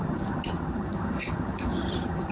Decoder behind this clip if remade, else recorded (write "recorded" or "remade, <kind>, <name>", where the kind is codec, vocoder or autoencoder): remade, vocoder, HiFi-GAN